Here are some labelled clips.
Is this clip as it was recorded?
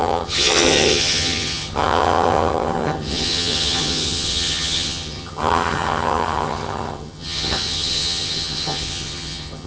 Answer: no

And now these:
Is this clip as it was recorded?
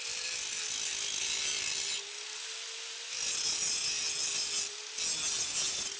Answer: yes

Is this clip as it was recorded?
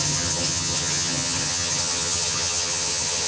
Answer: no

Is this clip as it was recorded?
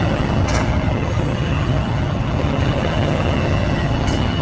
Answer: no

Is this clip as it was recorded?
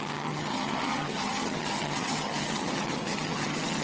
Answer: no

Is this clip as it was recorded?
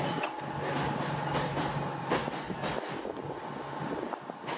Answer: yes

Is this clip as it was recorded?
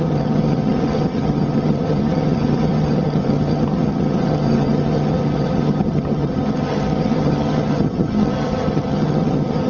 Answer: no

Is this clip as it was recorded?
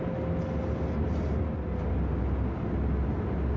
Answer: yes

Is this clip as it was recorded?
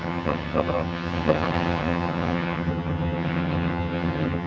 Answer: no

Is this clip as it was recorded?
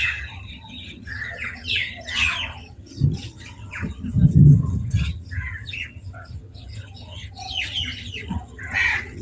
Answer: no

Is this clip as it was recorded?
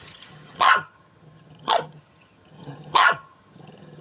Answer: no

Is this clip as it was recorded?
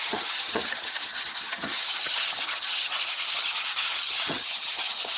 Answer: no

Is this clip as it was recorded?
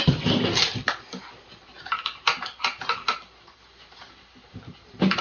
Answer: yes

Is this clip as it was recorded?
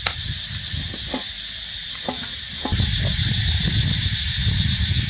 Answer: yes